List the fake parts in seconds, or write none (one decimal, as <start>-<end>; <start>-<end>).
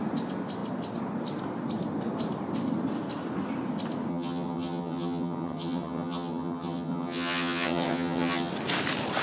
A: 4.1-8.5